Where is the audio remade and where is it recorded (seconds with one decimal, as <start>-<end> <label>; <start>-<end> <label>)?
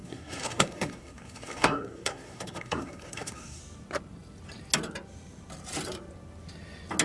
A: 0.0-3.6 remade; 3.6-7.0 recorded